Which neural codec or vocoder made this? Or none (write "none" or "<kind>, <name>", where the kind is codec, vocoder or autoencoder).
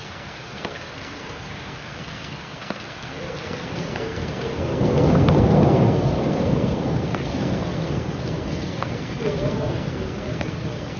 codec, SNAC